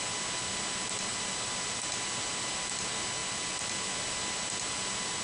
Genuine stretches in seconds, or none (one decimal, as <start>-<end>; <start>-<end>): 0.0-5.2